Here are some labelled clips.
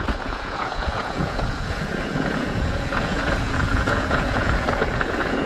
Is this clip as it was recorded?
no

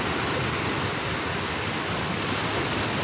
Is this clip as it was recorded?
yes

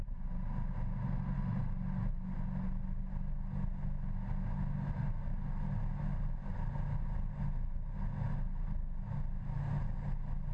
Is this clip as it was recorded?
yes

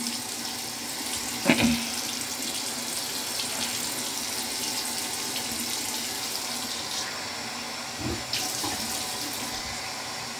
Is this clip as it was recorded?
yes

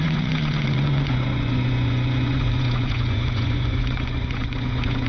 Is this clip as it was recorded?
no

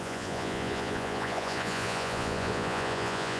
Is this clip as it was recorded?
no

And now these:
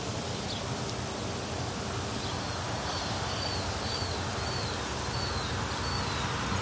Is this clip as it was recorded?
yes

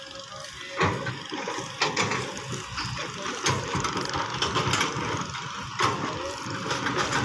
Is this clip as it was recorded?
yes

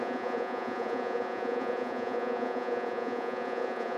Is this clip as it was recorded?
no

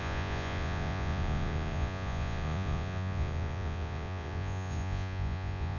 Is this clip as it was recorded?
no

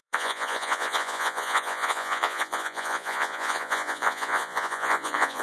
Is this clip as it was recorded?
no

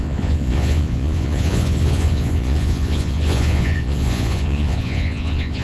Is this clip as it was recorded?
no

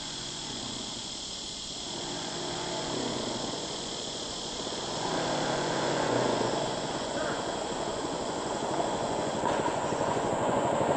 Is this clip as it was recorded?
no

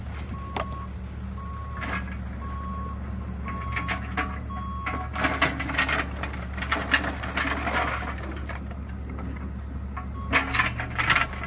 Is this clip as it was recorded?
yes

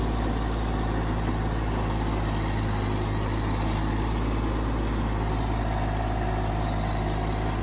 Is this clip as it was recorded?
yes